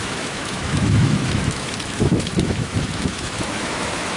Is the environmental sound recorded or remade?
remade